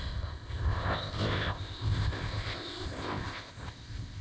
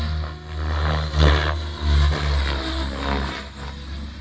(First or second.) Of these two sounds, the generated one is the first